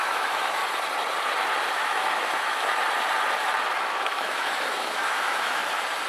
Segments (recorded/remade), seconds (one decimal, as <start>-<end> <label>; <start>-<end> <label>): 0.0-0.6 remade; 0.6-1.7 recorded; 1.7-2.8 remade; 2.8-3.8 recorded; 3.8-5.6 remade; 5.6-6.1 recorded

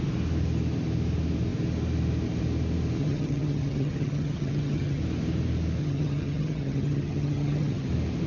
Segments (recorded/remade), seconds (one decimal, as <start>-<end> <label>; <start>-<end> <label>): 0.0-3.0 recorded; 3.0-5.0 remade; 5.0-5.8 recorded; 5.8-7.9 remade; 7.9-8.3 recorded

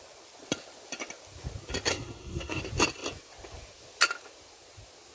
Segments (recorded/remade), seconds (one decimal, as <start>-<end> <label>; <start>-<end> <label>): 0.0-1.9 recorded; 1.9-2.6 remade; 2.6-5.1 recorded

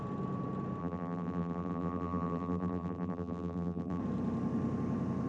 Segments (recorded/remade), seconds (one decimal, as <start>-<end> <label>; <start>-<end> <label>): 0.0-0.8 recorded; 0.8-4.0 remade; 4.0-5.3 recorded

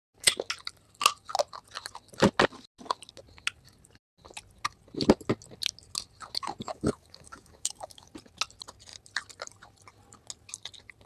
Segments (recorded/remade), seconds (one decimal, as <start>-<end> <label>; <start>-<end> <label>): 0.0-6.7 recorded; 6.7-8.1 remade; 8.1-11.1 recorded